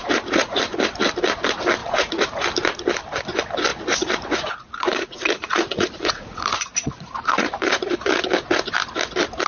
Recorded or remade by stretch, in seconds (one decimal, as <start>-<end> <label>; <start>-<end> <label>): 0.0-0.6 remade; 0.6-1.8 recorded; 1.8-2.4 remade; 2.4-3.7 recorded; 3.7-8.2 remade; 8.2-9.5 recorded